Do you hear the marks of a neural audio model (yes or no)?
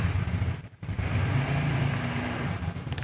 yes